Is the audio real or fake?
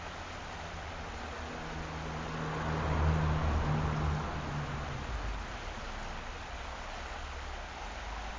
real